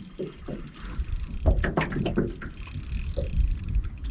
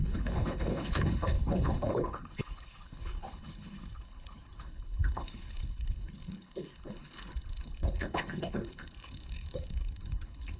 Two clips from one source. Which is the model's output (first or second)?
second